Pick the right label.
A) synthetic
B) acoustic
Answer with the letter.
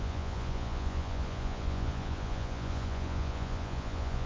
A